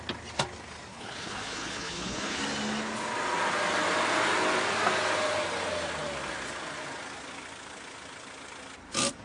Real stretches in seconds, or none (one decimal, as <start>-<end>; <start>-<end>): 0.0-0.9; 2.4-9.2